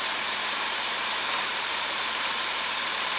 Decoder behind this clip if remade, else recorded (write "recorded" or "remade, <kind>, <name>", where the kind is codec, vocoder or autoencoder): remade, vocoder, BigVGAN v2